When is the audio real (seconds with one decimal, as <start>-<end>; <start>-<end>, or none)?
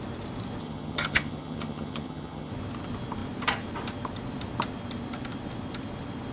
0.0-0.6; 2.5-6.3